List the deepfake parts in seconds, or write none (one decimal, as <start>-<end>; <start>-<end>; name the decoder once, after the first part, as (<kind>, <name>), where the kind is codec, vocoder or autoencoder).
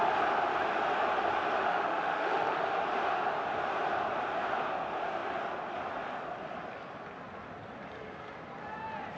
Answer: 1.7-2.8 (autoencoder, DAC-VAE)